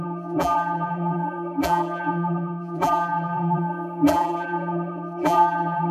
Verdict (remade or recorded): remade